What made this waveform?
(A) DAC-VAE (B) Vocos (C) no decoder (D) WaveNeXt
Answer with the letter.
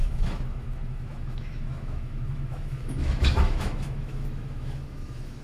A